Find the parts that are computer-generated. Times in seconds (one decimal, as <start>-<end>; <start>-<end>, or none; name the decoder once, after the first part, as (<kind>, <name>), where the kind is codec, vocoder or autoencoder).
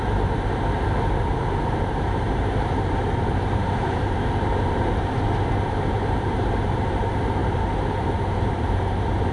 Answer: 0.0-9.3 (vocoder, BigVGAN v2)